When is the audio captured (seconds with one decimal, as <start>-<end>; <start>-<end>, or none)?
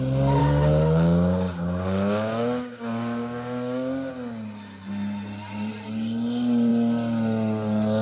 0.0-0.4; 4.1-8.0